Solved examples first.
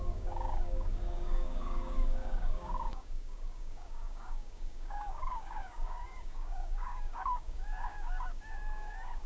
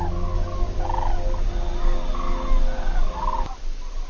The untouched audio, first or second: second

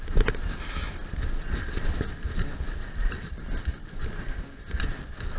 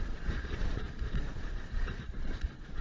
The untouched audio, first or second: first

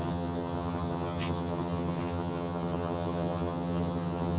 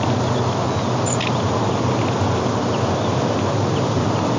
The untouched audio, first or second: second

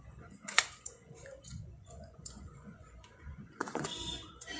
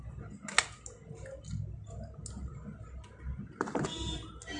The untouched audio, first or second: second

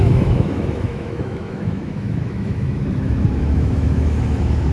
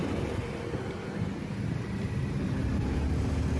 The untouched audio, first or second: second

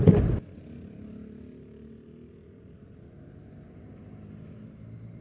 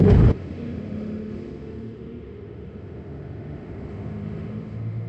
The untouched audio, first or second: first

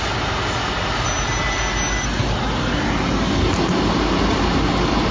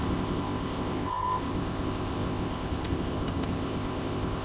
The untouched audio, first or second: first